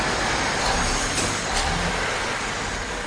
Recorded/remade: recorded